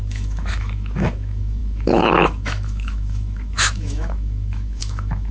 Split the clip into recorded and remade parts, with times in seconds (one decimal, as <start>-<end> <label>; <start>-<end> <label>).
0.0-5.3 remade